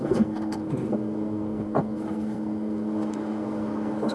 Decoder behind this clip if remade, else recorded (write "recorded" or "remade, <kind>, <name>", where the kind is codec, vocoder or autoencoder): remade, codec, SNAC